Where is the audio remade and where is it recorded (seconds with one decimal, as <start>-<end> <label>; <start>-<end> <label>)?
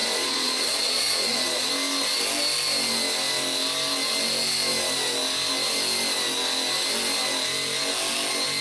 0.0-1.7 remade; 1.7-8.6 recorded